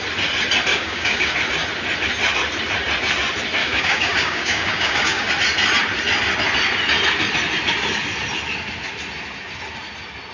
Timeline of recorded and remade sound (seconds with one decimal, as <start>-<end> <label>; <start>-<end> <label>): 0.0-0.7 recorded; 0.7-1.3 remade; 1.3-3.6 recorded; 3.6-5.3 remade; 5.3-10.3 recorded